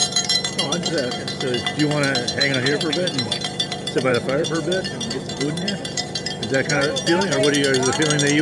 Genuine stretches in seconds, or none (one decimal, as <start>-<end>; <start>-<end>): 0.9-2.4; 7.4-8.4